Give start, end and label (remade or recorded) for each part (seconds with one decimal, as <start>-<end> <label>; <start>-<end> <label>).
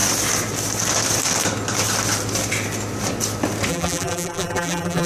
0.0-3.7 recorded; 3.7-5.1 remade